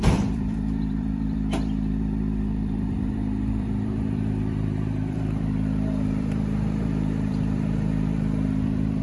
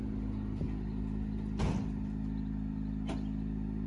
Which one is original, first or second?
second